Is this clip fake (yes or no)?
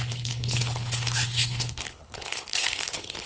yes